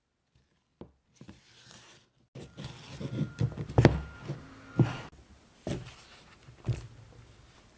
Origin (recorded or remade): recorded